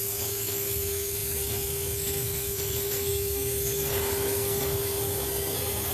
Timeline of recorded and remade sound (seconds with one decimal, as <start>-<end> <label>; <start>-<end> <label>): 0.0-5.9 remade